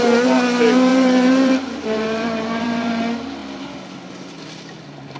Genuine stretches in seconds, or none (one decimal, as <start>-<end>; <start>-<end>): 0.0-0.9; 3.0-5.2